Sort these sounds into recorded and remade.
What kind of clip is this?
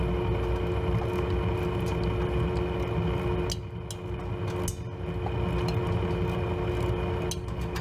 recorded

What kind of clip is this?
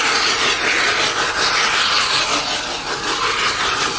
recorded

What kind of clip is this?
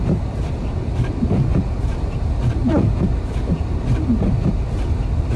recorded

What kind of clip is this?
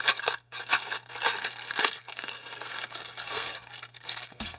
remade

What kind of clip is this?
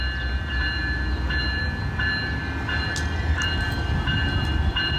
recorded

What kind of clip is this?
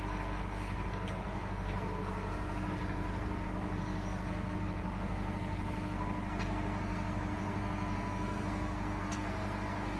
remade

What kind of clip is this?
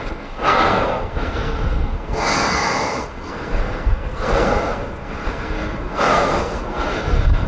remade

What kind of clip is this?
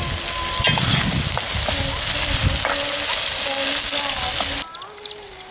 recorded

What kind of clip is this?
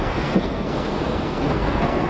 remade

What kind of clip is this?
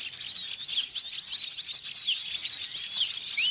recorded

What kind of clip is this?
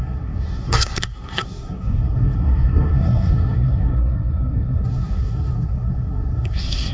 remade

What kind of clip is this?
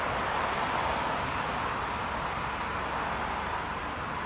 recorded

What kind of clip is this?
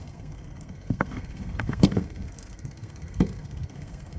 remade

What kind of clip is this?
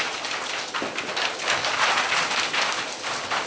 recorded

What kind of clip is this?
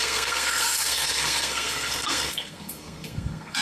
remade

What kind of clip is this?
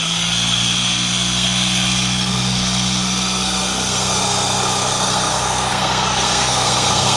remade